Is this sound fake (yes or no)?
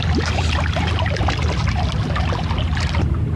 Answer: no